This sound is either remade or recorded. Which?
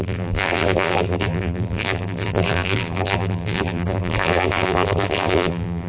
remade